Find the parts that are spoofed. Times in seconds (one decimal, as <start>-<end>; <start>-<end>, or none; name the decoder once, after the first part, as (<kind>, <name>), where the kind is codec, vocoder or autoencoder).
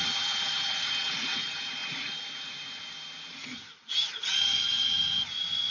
0.0-5.7 (vocoder, Vocos)